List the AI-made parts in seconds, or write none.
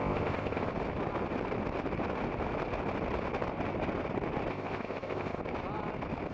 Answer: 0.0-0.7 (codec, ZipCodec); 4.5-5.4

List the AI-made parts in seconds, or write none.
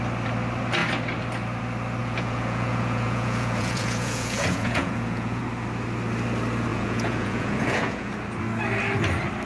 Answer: 2.0-5.4 (vocoder, Vocos); 6.7-8.1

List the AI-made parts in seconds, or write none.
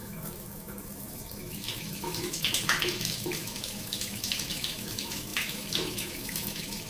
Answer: 0.0-6.9 (autoencoder, DAC-VAE)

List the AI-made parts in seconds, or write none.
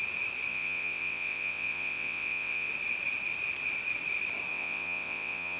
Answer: 0.5-2.7 (vocoder, WaveNeXt); 4.5-5.6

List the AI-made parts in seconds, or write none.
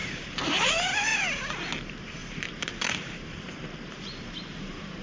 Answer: 0.0-0.7 (vocoder, BigVGAN v2); 2.2-5.0